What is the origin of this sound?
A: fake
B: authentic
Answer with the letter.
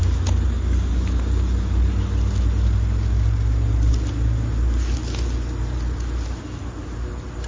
B